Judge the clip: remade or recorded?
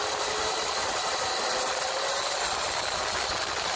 recorded